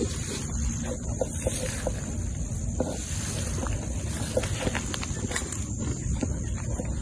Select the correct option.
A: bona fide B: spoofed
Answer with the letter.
A